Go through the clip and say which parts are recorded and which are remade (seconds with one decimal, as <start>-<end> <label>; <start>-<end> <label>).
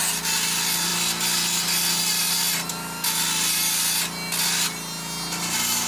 0.0-5.9 recorded